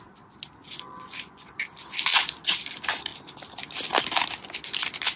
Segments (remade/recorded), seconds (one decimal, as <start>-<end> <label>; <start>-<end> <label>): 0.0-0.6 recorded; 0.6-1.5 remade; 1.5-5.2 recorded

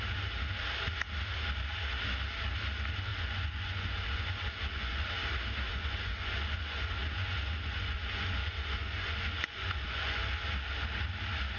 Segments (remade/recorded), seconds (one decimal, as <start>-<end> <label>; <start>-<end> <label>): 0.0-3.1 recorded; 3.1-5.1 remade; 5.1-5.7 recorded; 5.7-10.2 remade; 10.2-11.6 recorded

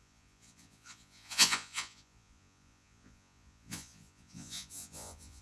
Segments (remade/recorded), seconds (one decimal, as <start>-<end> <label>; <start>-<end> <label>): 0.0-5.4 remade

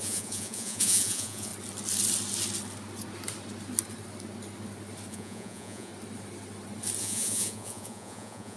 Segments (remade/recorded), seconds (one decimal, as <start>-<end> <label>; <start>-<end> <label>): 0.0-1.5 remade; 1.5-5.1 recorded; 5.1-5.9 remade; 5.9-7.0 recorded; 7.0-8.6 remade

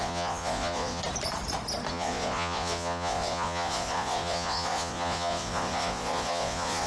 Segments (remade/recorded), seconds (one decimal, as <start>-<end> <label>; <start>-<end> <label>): 0.0-1.0 remade; 1.0-1.9 recorded; 1.9-6.9 remade

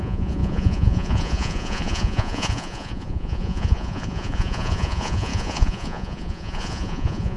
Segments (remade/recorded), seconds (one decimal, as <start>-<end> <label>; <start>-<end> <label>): 0.0-7.4 remade

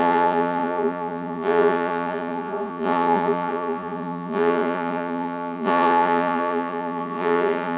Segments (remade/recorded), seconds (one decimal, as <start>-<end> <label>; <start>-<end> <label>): 0.0-7.8 remade

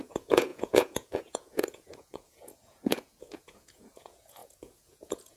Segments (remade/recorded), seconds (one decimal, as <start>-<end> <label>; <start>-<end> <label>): 0.0-5.4 remade